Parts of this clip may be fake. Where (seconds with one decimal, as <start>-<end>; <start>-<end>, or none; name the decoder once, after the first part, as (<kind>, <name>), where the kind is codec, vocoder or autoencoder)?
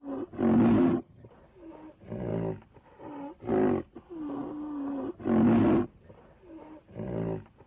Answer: 0.8-1.3 (vocoder, HiFi-GAN)